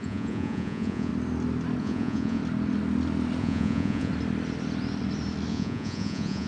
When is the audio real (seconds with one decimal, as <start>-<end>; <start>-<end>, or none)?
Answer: 1.1-1.8; 2.4-3.4; 4.1-5.5